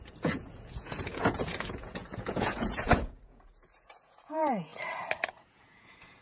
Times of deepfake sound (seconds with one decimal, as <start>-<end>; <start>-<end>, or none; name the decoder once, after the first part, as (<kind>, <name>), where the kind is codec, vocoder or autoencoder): 0.0-4.7 (vocoder, Vocos); 5.3-6.2